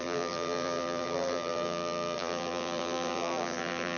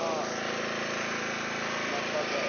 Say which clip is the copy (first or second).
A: first